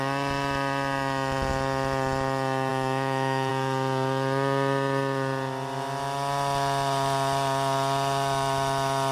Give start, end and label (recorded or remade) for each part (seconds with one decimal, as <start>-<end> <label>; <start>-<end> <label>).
0.0-2.7 recorded; 2.7-3.5 remade; 3.5-9.1 recorded